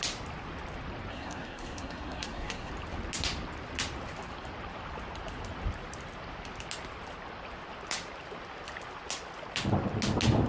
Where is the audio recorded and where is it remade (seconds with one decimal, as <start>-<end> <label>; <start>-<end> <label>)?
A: 0.0-1.1 recorded; 1.1-2.7 remade; 2.7-10.5 recorded